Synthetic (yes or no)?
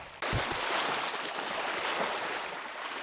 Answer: no